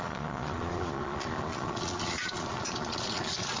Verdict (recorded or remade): remade